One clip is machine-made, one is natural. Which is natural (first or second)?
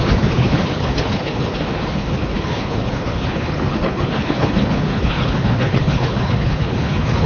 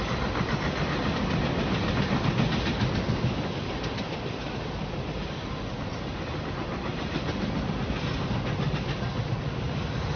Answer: second